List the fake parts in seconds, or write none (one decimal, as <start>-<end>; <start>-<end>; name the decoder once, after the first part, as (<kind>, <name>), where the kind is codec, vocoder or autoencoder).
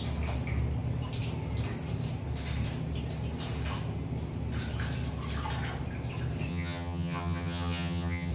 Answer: 6.5-8.3 (vocoder, HiFi-GAN)